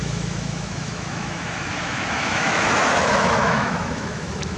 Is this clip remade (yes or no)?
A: yes